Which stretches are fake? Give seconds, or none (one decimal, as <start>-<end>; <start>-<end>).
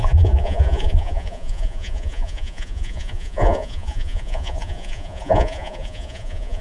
0.0-6.6